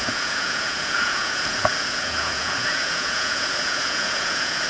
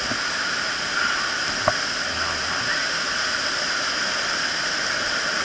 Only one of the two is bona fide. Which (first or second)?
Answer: second